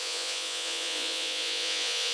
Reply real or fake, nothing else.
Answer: fake